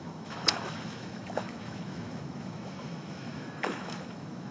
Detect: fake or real fake